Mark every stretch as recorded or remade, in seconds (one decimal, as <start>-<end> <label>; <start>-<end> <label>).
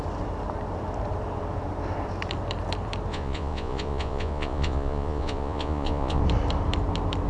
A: 0.0-3.1 recorded; 3.1-6.2 remade; 6.2-7.3 recorded